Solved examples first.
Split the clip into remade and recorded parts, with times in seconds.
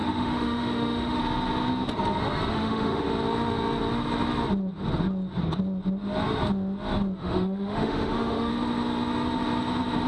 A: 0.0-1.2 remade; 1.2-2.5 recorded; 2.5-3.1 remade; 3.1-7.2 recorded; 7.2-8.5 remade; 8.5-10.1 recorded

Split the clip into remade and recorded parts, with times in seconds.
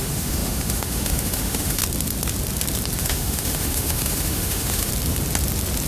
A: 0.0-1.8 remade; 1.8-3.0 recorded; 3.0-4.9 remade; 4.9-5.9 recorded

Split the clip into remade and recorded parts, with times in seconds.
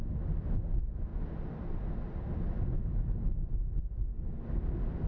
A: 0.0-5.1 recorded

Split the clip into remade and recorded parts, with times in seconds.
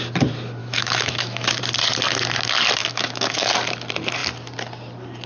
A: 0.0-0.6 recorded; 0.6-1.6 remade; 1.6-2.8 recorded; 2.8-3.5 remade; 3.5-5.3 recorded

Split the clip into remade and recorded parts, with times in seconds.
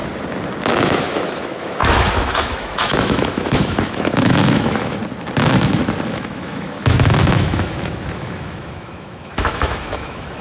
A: 0.0-0.7 recorded; 0.7-5.0 remade; 5.0-6.1 recorded; 6.1-10.4 remade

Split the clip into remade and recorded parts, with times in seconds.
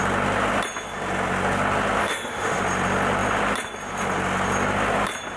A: 0.0-2.0 recorded; 2.0-2.6 remade; 2.6-5.4 recorded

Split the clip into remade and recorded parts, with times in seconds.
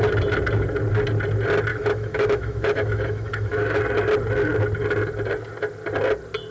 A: 0.0-1.7 recorded; 1.7-3.8 remade; 3.8-6.5 recorded